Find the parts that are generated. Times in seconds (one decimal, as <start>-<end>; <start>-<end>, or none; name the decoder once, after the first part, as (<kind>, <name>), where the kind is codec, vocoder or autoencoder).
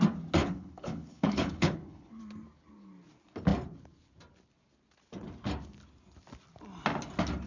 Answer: 0.4-2.2 (codec, HILCodec)